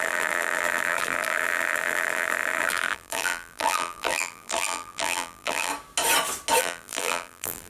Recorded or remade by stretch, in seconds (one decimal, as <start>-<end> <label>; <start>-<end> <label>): 0.0-5.7 remade; 5.7-6.6 recorded; 6.6-7.7 remade